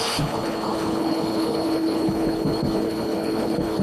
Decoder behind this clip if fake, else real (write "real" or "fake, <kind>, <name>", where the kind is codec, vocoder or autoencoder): fake, codec, HILCodec